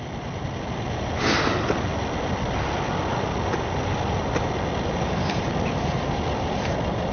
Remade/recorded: recorded